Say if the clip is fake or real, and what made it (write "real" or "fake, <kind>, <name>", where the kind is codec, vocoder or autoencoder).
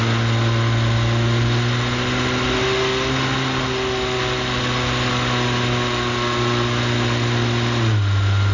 real